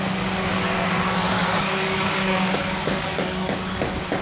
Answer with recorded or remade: remade